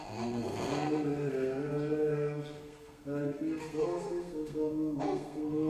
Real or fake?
fake